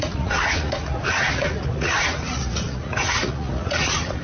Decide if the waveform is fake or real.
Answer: fake